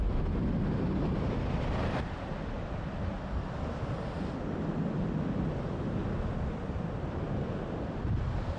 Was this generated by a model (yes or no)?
no